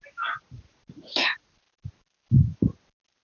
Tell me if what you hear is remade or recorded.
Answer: recorded